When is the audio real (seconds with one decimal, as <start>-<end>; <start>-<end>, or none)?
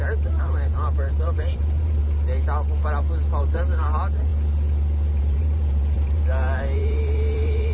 2.0-3.4; 4.3-5.2